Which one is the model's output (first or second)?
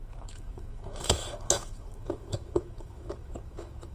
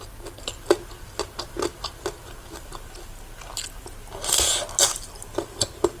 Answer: first